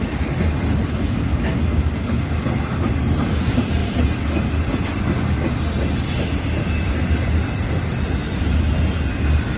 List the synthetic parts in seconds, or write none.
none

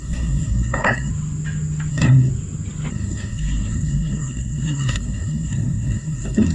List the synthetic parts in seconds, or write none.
0.0-1.1 (codec, SNAC); 1.9-2.3; 2.9-6.5

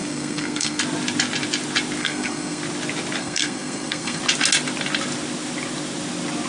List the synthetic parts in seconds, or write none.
0.0-0.8 (codec, SNAC); 2.0-2.6; 3.2-4.2

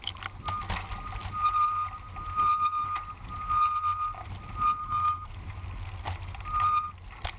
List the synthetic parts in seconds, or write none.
4.8-5.3 (codec, SNAC)

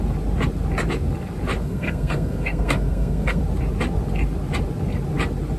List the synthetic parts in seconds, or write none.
1.6-3.4 (codec, SNAC)